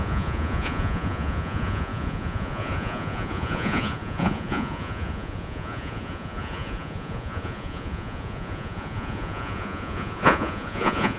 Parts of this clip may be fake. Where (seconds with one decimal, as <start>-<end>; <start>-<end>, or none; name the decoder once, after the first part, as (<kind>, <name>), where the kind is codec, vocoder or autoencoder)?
0.0-11.2 (vocoder, Vocos)

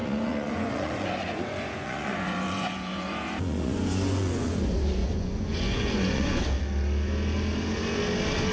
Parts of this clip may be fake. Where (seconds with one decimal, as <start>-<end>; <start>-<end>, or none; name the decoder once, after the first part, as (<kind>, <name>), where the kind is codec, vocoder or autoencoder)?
0.0-4.6 (vocoder, Vocos); 5.0-6.4